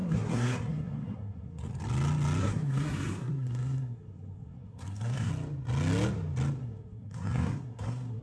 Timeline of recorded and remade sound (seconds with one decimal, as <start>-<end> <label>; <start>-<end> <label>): 0.0-1.7 remade; 1.7-2.4 recorded; 2.4-5.3 remade; 5.3-6.6 recorded; 6.6-8.2 remade